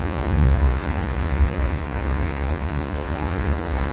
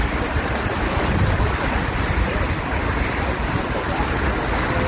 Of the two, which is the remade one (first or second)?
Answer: first